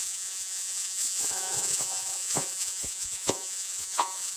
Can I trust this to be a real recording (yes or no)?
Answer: no